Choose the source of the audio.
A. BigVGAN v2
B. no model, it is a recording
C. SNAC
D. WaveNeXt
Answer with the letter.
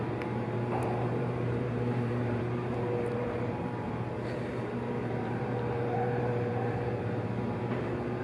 A